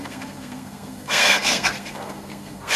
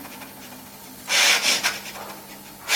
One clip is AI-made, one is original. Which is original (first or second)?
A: second